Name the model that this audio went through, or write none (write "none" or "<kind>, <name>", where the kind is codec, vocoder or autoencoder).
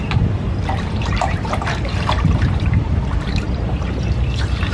vocoder, BigVGAN v2